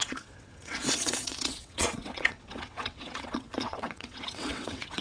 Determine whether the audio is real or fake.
fake